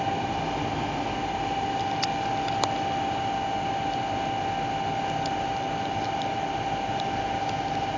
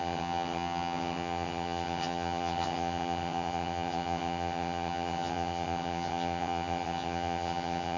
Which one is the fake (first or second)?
second